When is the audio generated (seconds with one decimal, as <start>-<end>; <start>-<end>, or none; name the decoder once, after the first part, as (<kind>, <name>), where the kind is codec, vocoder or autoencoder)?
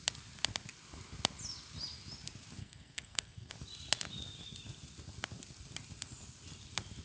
2.6-3.5 (codec, SNAC)